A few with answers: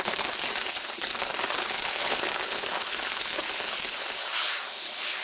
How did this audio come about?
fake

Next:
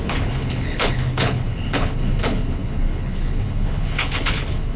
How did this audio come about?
fake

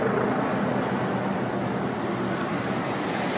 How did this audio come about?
real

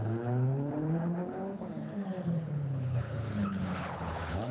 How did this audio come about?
fake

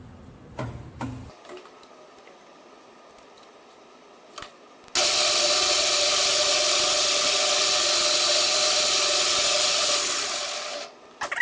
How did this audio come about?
real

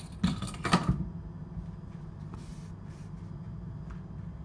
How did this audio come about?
real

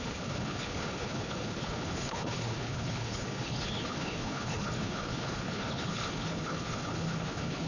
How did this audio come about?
fake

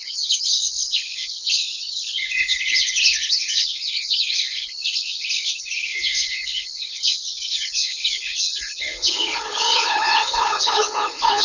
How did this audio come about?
fake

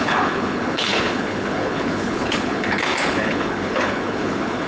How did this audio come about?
fake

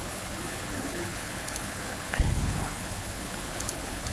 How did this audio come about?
fake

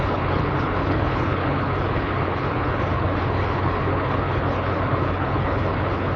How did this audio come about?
fake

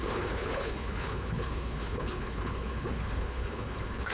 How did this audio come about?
fake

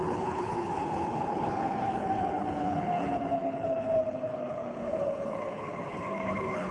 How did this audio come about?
fake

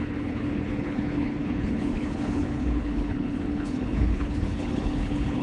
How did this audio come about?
fake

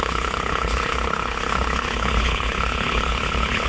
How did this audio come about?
fake